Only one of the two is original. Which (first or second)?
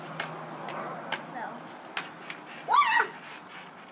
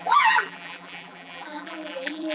first